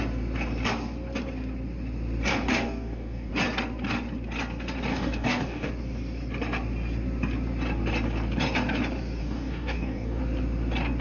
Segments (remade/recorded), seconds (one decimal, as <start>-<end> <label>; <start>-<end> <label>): 0.0-2.3 recorded; 2.3-3.3 remade; 3.3-4.9 recorded; 4.9-5.7 remade; 5.7-9.2 recorded; 9.2-10.2 remade; 10.2-11.0 recorded